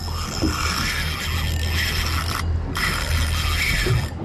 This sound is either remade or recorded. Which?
recorded